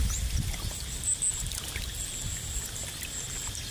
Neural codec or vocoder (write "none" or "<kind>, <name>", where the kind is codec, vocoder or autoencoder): none